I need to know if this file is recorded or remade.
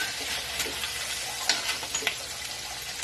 recorded